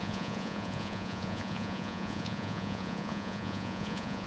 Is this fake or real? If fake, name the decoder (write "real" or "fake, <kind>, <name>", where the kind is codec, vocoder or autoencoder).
fake, vocoder, Vocos